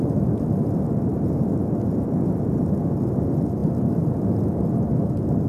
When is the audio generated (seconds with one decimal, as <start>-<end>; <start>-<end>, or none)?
none